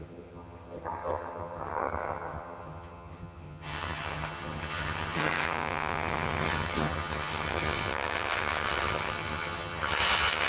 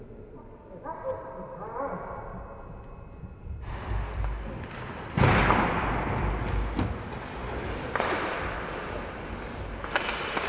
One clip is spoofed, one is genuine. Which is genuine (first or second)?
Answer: second